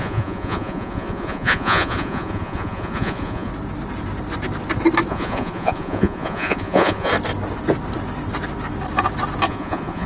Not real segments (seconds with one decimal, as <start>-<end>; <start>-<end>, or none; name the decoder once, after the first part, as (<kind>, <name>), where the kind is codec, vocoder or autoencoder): 0.0-3.5 (vocoder, Vocos); 5.1-7.1; 9.5-10.1